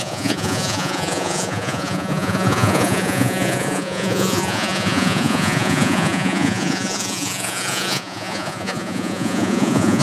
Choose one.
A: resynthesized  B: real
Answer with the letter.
A